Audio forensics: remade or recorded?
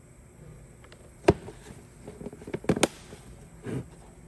recorded